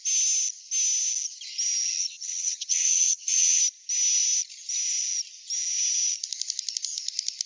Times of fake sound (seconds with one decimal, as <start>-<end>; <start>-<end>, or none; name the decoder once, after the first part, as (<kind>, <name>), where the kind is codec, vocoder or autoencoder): 2.0-3.6 (vocoder, HiFi-GAN)